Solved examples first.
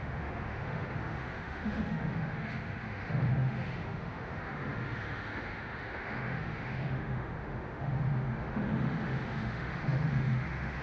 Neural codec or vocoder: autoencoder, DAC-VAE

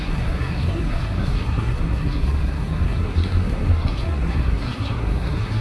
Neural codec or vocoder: codec, SNAC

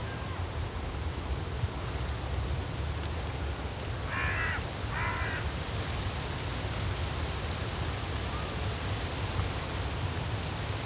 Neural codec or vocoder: none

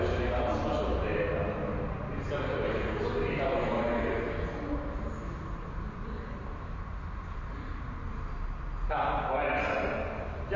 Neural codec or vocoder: none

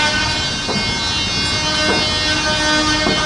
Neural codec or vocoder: none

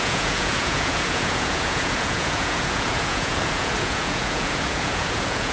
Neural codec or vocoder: vocoder, Vocos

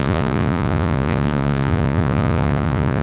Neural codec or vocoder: vocoder, Vocos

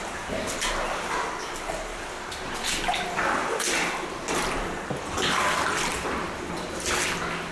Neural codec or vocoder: none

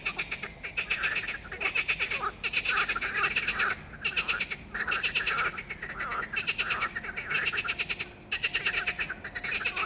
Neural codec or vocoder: none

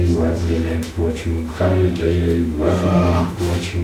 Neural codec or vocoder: autoencoder, DAC-VAE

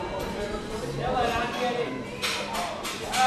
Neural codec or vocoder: none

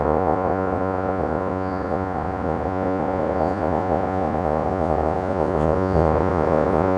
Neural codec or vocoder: vocoder, Vocos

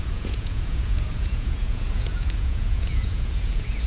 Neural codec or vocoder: vocoder, Vocos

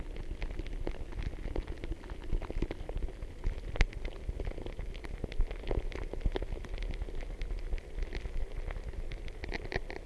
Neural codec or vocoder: none